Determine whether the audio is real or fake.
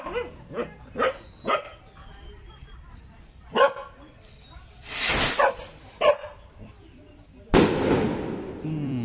fake